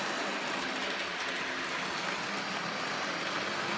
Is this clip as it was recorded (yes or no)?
yes